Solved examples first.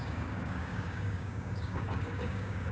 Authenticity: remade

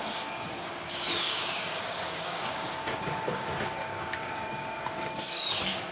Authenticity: remade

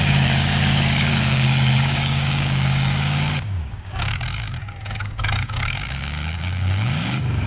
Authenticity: remade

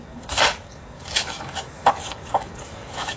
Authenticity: remade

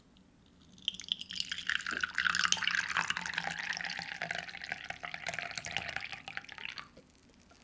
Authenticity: recorded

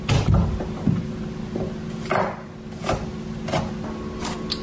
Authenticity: recorded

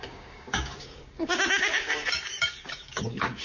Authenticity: remade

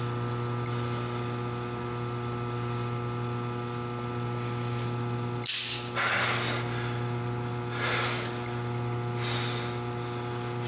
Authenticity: recorded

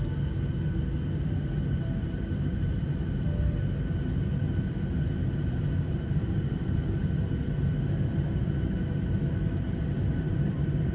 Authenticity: recorded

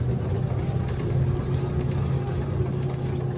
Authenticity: recorded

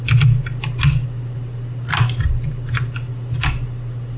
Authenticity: recorded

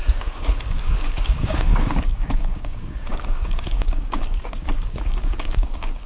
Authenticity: remade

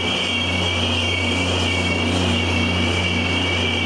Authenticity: recorded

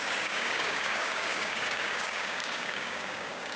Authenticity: remade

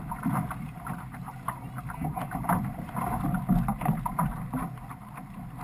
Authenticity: recorded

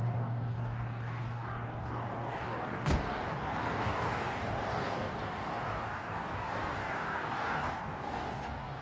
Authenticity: remade